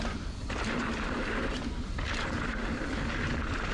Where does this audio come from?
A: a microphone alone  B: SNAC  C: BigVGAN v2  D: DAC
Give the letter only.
A